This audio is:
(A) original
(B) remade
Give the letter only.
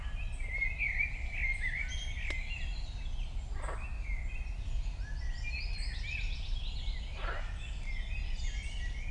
A